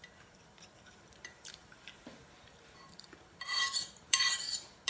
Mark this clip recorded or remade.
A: remade